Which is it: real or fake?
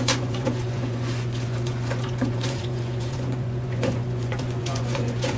fake